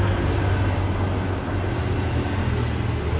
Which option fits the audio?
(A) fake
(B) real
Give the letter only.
B